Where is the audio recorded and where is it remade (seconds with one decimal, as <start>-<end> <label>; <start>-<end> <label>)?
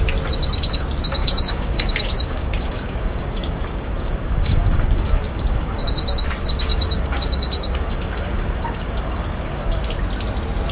0.0-1.2 recorded; 1.2-5.8 remade; 5.8-6.7 recorded; 6.7-9.8 remade; 9.8-10.7 recorded